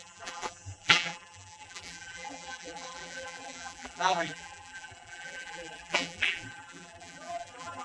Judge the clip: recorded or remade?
remade